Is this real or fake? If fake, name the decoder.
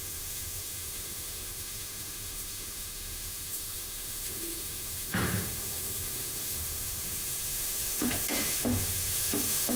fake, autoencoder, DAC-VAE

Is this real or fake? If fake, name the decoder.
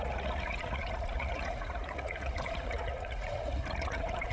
fake, vocoder, Vocos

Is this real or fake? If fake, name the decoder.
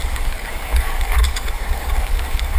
fake, codec, DAC